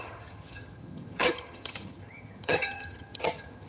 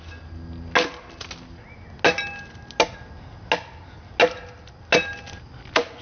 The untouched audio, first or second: second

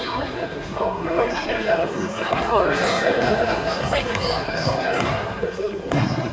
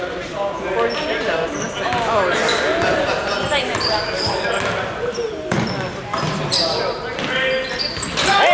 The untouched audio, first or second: second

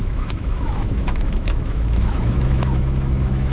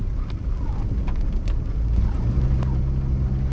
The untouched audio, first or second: second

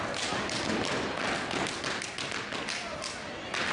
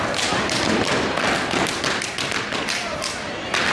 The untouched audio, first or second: first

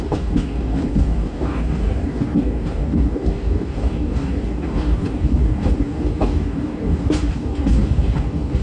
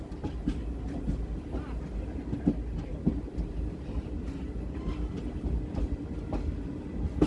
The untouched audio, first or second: second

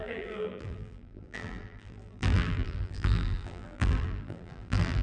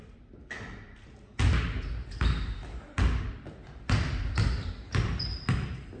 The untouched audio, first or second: second